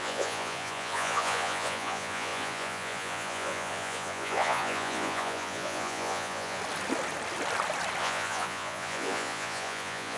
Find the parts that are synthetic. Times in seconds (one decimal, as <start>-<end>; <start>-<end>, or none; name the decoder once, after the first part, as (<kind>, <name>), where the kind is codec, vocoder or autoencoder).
0.0-6.6 (vocoder, Vocos); 8.0-10.2